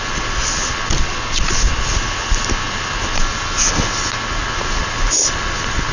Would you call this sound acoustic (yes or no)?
yes